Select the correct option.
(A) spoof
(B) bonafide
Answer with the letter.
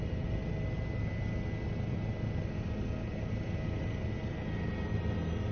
B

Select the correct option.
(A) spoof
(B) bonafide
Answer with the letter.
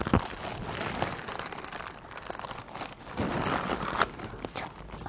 B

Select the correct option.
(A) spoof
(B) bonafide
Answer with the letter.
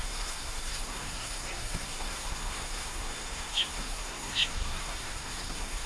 A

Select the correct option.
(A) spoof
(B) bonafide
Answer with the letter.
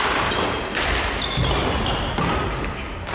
B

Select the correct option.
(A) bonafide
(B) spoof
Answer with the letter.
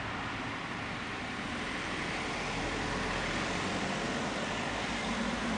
A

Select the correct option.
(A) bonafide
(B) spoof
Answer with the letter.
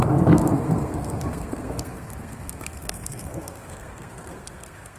B